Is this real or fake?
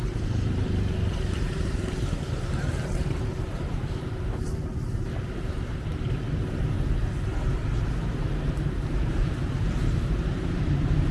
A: fake